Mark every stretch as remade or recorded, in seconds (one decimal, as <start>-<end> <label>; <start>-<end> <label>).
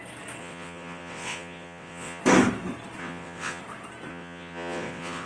0.0-0.4 recorded; 0.4-2.2 remade; 2.2-3.0 recorded; 3.0-3.6 remade; 3.6-4.1 recorded; 4.1-5.3 remade